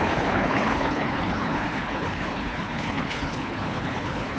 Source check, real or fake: fake